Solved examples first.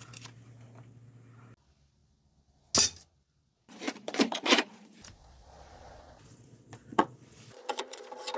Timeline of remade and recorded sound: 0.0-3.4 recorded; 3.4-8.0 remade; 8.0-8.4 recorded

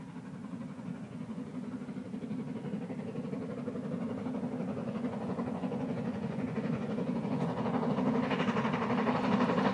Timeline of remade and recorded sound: 0.0-0.4 recorded; 0.4-1.9 remade; 1.9-4.8 recorded; 4.8-7.9 remade; 7.9-9.7 recorded

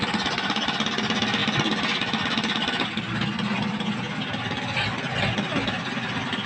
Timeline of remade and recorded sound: 0.0-6.5 recorded

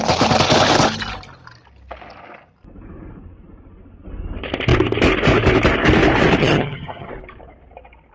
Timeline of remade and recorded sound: 0.0-6.4 recorded; 6.4-7.1 remade; 7.1-8.1 recorded

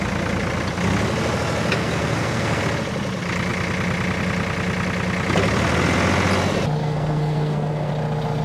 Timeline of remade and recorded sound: 0.0-1.8 recorded; 1.8-2.6 remade; 2.6-6.8 recorded; 6.8-7.9 remade; 7.9-8.4 recorded

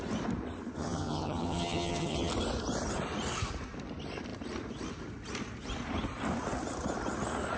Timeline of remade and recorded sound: 0.0-0.8 recorded; 0.8-2.3 remade; 2.3-7.6 recorded

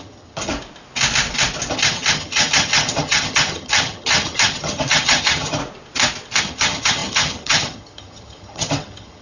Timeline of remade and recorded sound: 0.0-0.5 remade; 0.5-1.7 recorded; 1.7-5.6 remade; 5.6-6.4 recorded; 6.4-9.2 remade

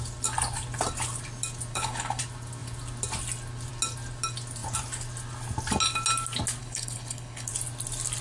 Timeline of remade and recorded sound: 0.0-1.7 recorded; 1.7-2.2 remade; 2.2-6.6 recorded; 6.6-7.5 remade; 7.5-8.2 recorded